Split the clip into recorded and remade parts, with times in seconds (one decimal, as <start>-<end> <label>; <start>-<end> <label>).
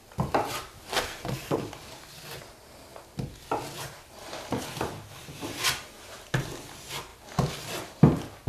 0.0-0.9 recorded; 0.9-1.6 remade; 1.6-8.5 recorded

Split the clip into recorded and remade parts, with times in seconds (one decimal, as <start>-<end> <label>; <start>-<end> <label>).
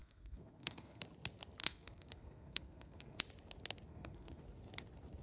0.0-1.0 remade; 1.0-1.6 recorded; 1.6-3.2 remade; 3.2-3.9 recorded; 3.9-4.4 remade; 4.4-5.2 recorded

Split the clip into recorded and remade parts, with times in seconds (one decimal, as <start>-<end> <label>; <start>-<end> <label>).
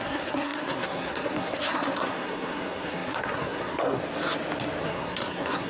0.0-4.0 remade; 4.0-4.8 recorded; 4.8-5.7 remade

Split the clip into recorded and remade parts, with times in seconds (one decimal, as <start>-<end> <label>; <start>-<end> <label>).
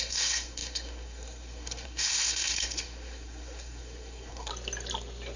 0.0-4.5 remade; 4.5-5.4 recorded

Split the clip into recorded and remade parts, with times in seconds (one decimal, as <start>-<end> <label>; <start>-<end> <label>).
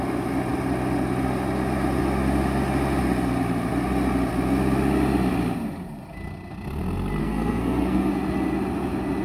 0.0-7.2 recorded; 7.2-8.1 remade; 8.1-9.2 recorded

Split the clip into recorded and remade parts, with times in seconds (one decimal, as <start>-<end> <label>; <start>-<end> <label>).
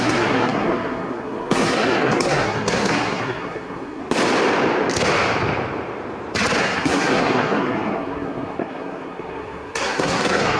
0.0-4.0 remade; 4.0-6.6 recorded; 6.6-10.6 remade